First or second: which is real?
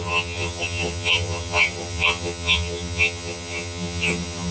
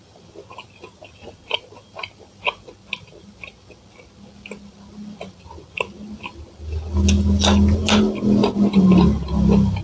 second